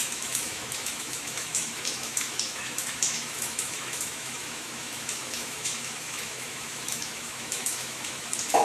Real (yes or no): no